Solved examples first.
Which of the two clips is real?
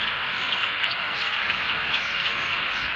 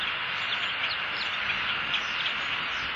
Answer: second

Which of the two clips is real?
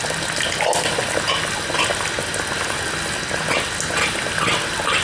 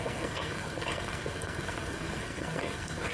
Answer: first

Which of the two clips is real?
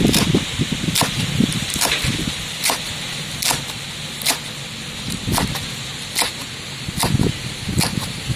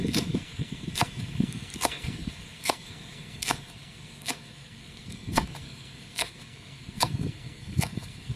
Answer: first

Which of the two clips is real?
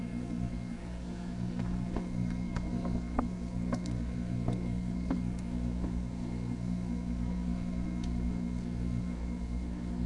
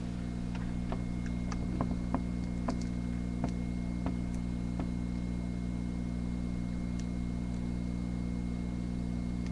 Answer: second